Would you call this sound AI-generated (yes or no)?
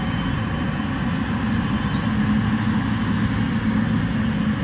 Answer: no